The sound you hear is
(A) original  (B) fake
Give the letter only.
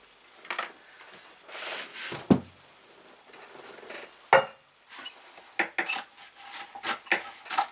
A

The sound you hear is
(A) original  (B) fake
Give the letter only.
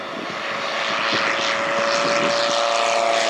A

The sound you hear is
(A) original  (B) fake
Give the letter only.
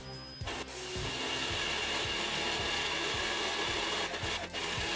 A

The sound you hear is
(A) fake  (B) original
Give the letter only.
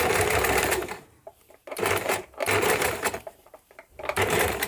A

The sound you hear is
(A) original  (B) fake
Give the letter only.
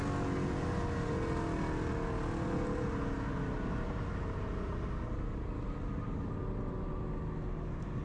A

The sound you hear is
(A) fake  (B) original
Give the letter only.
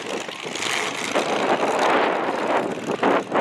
B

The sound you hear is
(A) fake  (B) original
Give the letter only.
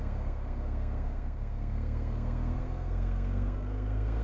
A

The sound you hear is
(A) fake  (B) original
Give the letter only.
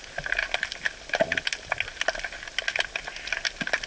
B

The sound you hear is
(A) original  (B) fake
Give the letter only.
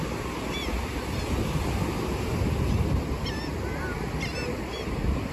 A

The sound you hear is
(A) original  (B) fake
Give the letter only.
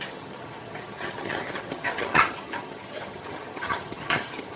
B